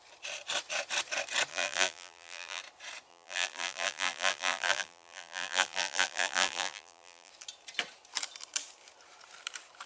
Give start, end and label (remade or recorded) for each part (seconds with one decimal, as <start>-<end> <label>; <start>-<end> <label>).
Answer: 0.0-1.5 recorded; 1.5-2.6 remade; 2.6-3.1 recorded; 3.1-7.3 remade; 7.3-9.9 recorded